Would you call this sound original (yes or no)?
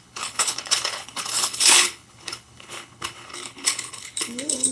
no